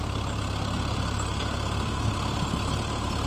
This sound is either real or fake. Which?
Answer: real